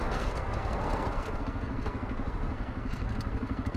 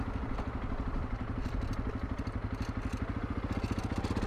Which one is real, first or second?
second